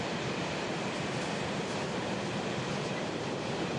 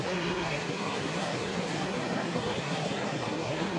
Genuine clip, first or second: first